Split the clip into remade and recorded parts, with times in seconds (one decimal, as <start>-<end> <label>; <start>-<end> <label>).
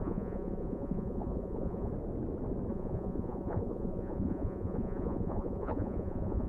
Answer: 0.0-1.9 remade; 1.9-2.7 recorded; 2.7-6.5 remade